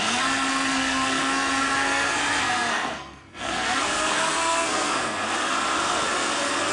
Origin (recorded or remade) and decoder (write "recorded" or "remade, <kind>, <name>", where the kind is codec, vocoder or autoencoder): remade, codec, SNAC